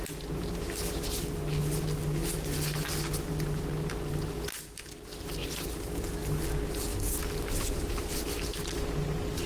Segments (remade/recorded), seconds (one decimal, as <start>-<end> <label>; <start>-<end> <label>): 0.0-9.5 recorded